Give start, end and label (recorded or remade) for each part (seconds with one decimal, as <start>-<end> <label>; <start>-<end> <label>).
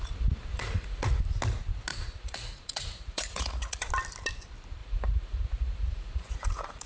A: 0.0-0.5 recorded; 0.5-1.2 remade; 1.2-1.9 recorded; 1.9-3.9 remade; 3.9-4.8 recorded; 4.8-6.9 remade